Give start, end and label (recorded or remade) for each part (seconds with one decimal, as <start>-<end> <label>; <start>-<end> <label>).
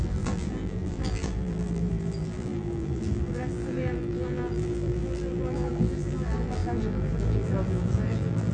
0.0-8.5 remade